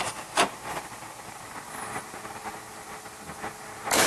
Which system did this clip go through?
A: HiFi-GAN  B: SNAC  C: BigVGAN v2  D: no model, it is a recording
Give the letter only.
D